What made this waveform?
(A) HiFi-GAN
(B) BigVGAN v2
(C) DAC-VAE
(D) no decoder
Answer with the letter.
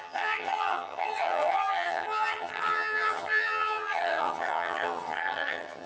A